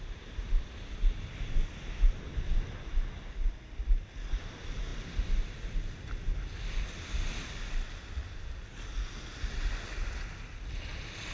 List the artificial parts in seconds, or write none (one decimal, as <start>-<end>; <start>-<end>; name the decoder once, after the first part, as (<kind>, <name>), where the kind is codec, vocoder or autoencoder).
none